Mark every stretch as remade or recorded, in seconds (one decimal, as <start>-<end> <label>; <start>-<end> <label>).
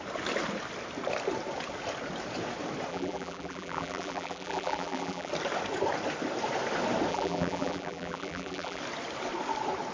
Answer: 0.0-2.9 recorded; 2.9-5.3 remade; 5.3-7.1 recorded; 7.1-8.8 remade; 8.8-9.9 recorded